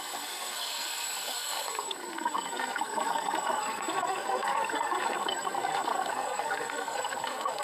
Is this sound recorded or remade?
remade